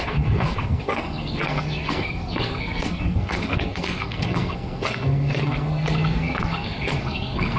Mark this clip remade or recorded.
remade